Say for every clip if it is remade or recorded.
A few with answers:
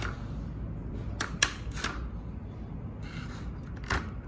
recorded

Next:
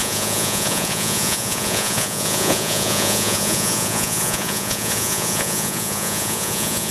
remade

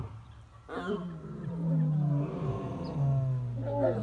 recorded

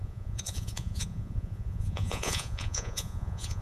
remade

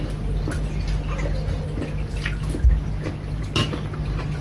recorded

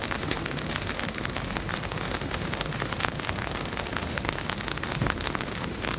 remade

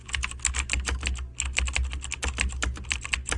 recorded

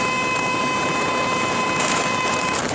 remade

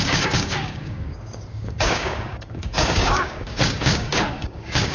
remade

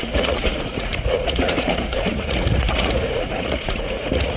remade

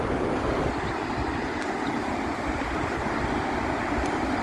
recorded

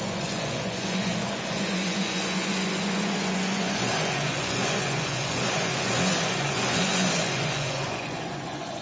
remade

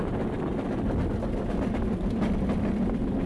recorded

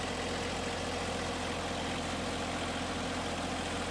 recorded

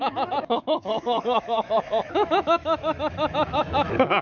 remade